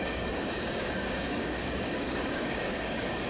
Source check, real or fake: fake